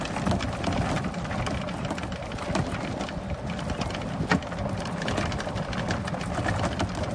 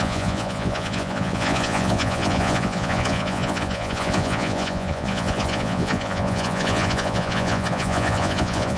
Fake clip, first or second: second